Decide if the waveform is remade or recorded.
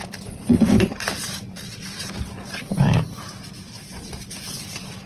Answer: remade